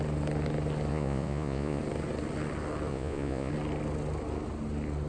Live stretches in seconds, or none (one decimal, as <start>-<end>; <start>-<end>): 0.0-0.9; 1.8-2.9; 3.5-5.1